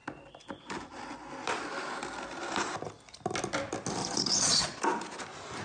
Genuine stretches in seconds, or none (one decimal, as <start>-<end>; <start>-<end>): 0.0-4.0; 4.8-5.6